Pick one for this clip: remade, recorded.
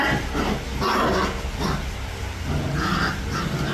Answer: recorded